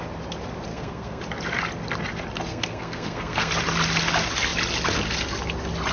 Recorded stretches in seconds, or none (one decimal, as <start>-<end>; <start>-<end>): 0.0-0.7; 1.2-2.5; 3.5-5.9